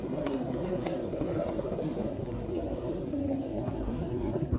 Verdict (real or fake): fake